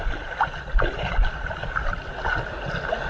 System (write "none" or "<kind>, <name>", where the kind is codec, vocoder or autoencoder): none